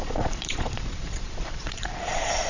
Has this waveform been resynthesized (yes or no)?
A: yes